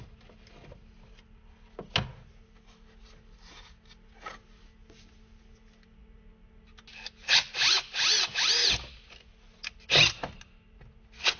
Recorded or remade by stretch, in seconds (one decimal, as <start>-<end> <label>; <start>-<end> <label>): 0.0-11.4 recorded